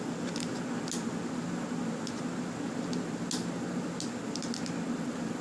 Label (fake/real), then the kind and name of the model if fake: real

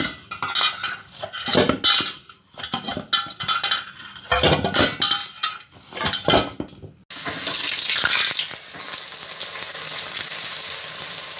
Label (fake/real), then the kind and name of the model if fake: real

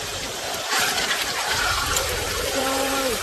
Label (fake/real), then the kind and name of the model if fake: fake, vocoder, BigVGAN v2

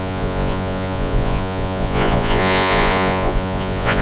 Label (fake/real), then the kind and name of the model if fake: fake, vocoder, Vocos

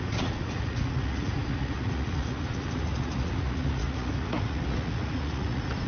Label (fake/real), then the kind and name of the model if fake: fake, vocoder, Vocos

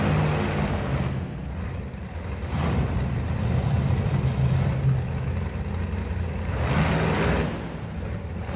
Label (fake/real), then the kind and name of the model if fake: real